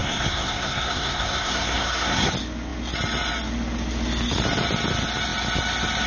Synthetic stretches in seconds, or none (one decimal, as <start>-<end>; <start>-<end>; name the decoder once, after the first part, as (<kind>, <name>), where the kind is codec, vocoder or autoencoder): 0.0-2.3 (codec, SNAC)